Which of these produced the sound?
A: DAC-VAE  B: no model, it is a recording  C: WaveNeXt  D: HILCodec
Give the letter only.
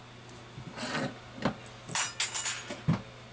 B